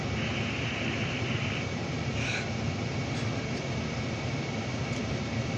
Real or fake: real